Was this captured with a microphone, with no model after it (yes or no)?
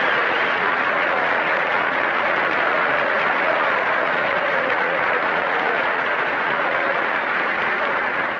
no